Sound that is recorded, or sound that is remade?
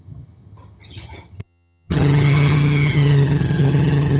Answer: remade